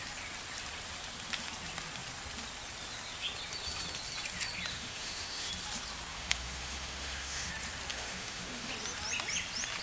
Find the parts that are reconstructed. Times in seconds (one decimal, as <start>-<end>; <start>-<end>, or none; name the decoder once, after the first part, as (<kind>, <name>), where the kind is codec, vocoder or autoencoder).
4.7-5.5 (autoencoder, DAC-VAE); 6.1-7.5; 7.9-8.7